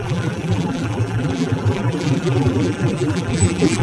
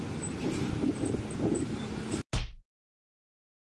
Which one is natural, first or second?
second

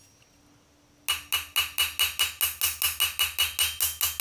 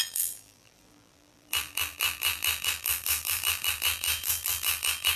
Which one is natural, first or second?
first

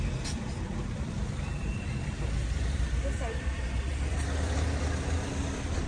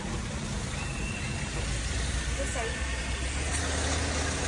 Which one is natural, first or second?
second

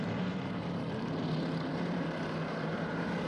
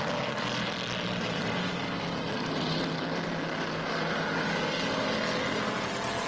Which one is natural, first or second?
second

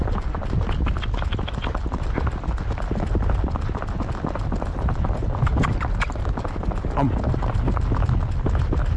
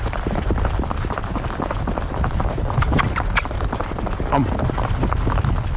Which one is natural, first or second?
first